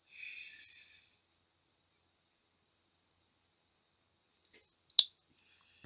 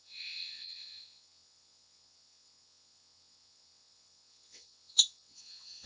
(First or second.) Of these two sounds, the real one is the first